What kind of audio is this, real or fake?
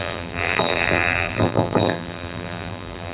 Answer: fake